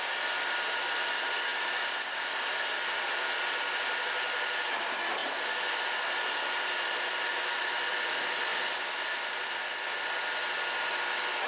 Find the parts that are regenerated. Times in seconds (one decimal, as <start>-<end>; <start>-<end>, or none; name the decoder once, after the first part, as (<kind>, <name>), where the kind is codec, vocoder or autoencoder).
none

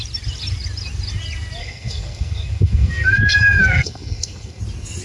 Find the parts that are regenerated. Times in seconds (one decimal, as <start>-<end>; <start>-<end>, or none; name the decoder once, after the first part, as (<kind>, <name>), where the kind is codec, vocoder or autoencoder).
1.6-4.6 (codec, SNAC)

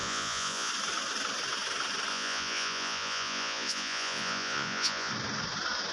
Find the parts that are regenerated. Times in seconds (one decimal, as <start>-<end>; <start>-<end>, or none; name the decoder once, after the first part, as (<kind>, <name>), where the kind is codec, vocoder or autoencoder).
0.0-0.7 (vocoder, Vocos); 2.1-5.1

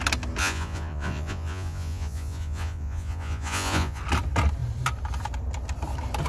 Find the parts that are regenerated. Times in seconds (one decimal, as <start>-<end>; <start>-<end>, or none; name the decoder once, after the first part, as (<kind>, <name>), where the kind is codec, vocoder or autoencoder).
0.4-4.0 (vocoder, Vocos)

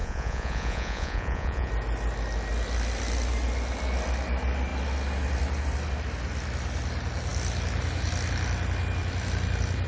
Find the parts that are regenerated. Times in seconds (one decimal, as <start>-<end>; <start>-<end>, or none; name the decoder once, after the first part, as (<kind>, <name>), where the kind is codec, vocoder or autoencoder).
0.0-1.7 (vocoder, Vocos)

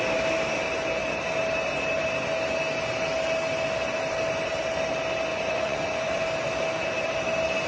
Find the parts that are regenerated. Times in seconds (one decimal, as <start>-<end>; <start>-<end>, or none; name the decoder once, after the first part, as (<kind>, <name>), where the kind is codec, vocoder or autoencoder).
5.3-6.2 (vocoder, Vocos)

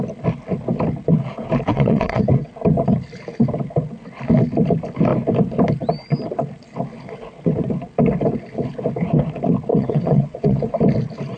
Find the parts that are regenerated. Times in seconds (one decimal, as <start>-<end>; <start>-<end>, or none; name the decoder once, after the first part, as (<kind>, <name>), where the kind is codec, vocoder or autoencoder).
1.7-2.5 (vocoder, WaveNeXt); 9.7-10.7

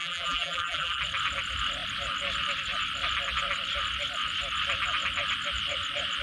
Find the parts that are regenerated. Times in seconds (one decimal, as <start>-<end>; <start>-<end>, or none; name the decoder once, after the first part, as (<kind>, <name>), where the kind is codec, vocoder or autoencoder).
0.0-1.0 (vocoder, BigVGAN v2)